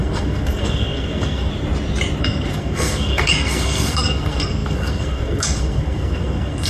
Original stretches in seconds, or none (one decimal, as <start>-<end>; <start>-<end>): 1.5-2.2